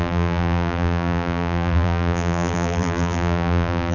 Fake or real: fake